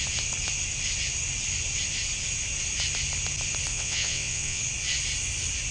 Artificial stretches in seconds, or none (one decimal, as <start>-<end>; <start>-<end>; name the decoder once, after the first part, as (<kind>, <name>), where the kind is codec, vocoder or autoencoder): 3.7-4.6 (vocoder, WaveNeXt)